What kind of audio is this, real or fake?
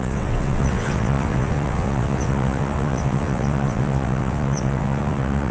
fake